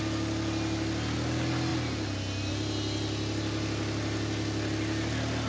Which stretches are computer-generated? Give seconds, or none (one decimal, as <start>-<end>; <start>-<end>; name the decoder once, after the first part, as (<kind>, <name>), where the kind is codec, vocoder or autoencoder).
none